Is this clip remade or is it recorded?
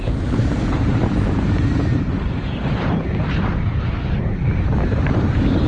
remade